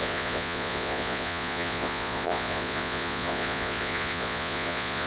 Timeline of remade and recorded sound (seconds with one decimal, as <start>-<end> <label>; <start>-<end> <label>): 0.0-5.1 remade